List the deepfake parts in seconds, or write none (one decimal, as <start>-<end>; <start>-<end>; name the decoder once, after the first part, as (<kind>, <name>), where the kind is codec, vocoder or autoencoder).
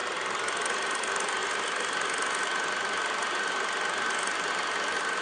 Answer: none